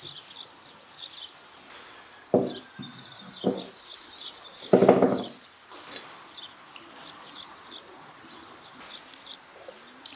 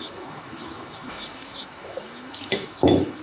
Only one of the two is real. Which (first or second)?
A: first